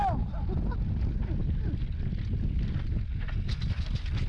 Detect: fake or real real